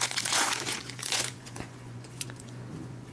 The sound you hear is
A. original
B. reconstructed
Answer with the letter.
B